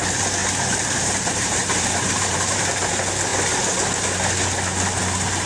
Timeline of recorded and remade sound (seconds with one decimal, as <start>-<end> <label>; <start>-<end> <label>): 0.0-0.4 recorded; 0.4-2.9 remade; 2.9-5.5 recorded